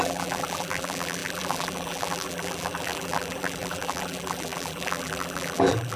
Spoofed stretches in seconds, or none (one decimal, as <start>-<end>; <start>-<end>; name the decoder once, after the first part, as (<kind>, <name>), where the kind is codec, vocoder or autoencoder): 0.0-6.0 (vocoder, BigVGAN v2)